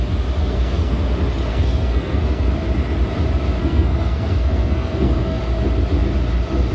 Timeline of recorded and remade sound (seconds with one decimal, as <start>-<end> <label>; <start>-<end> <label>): 0.0-0.4 recorded; 0.4-1.0 remade; 1.0-1.5 recorded; 1.5-2.5 remade; 2.5-3.6 recorded; 3.6-5.4 remade; 5.4-6.7 recorded